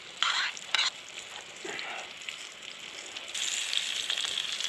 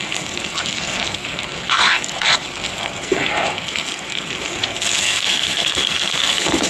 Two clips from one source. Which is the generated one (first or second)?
second